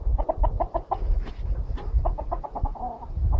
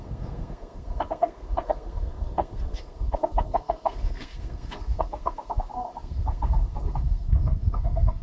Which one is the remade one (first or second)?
second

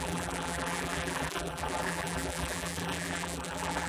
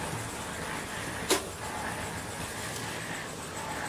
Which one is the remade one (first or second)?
first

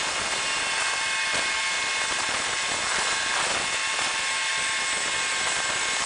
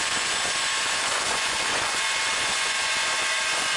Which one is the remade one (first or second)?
second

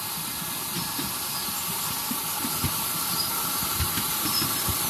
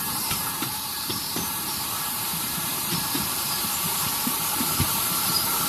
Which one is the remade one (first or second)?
second